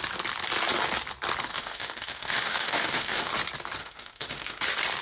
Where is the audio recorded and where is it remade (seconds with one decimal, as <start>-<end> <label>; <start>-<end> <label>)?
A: 0.0-1.5 recorded; 1.5-3.3 remade; 3.3-3.8 recorded; 3.8-4.6 remade; 4.6-5.0 recorded